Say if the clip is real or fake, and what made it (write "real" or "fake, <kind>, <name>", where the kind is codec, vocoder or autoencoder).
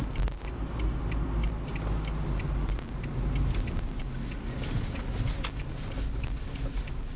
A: real